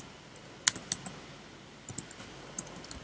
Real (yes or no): yes